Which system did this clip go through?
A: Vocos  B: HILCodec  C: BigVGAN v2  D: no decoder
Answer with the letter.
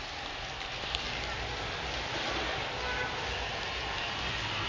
D